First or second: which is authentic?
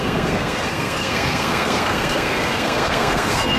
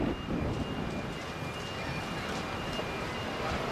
second